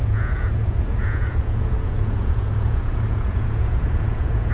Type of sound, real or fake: fake